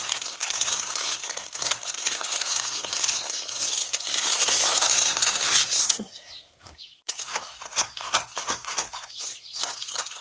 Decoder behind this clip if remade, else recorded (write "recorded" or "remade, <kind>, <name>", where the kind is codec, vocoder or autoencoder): remade, codec, SNAC